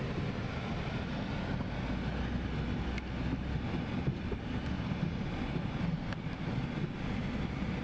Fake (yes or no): no